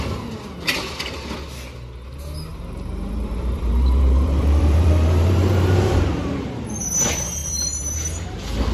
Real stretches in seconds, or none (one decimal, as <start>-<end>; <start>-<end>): 0.0-2.5; 6.9-7.4; 8.0-8.7